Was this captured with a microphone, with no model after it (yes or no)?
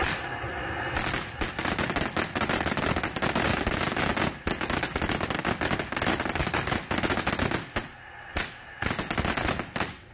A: yes